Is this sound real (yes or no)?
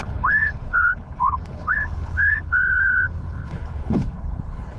no